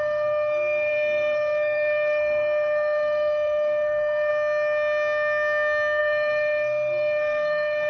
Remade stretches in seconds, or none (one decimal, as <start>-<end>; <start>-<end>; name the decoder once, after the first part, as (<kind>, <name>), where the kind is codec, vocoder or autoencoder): 0.0-4.3 (codec, SNAC); 6.0-7.9